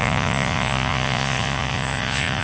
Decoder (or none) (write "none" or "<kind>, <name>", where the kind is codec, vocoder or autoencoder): vocoder, Vocos